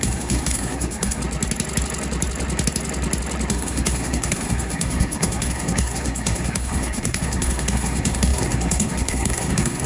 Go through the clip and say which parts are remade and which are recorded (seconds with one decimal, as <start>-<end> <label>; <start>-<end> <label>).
0.0-1.2 remade; 1.2-3.5 recorded; 3.5-9.9 remade